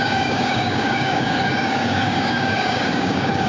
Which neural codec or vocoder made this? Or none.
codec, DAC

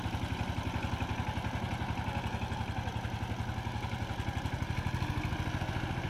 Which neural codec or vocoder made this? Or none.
none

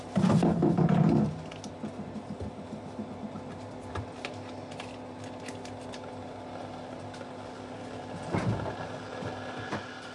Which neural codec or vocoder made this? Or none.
none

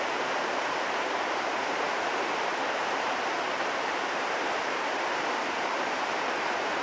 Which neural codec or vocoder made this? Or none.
vocoder, BigVGAN v2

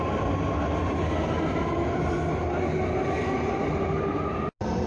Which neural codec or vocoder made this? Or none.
none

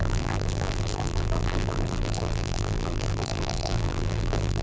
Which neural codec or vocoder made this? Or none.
vocoder, BigVGAN v2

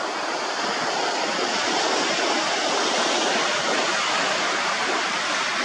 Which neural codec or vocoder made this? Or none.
none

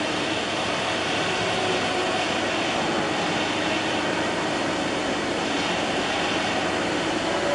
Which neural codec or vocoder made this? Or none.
none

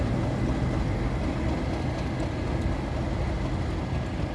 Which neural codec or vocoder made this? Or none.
none